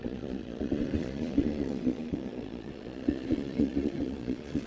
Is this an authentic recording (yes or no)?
no